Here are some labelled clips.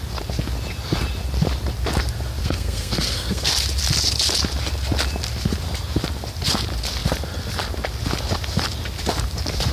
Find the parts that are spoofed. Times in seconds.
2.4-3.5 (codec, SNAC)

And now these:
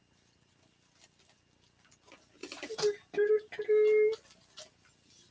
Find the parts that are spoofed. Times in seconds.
2.4-3.3 (vocoder, BigVGAN v2)

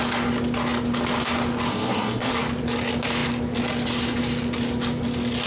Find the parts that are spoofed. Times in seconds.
1.7-2.3 (codec, SNAC)